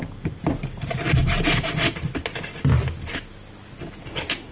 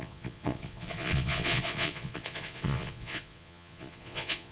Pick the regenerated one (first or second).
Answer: second